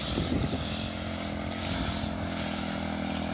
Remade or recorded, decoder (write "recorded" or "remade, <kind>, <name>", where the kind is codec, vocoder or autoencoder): recorded